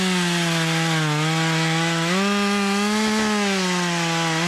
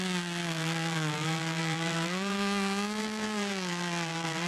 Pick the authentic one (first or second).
first